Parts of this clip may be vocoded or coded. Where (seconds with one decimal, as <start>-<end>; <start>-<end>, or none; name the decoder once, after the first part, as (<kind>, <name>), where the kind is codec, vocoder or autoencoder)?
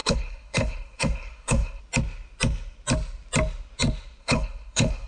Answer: 0.0-1.8 (codec, HILCodec); 4.2-5.1